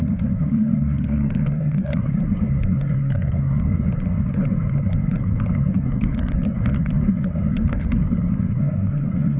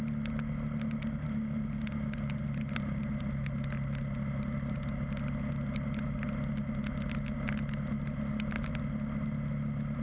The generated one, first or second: first